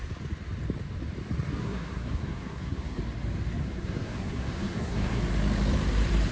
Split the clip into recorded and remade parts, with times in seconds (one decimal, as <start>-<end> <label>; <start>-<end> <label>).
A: 0.0-1.6 recorded; 1.6-3.0 remade; 3.0-3.6 recorded; 3.6-5.2 remade; 5.2-6.3 recorded